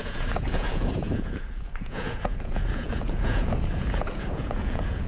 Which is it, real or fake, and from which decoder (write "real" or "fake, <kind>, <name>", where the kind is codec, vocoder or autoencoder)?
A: fake, vocoder, Vocos